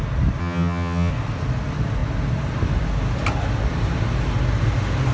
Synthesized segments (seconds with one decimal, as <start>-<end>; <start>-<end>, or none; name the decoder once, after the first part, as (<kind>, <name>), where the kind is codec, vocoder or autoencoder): 0.4-1.1 (vocoder, HiFi-GAN)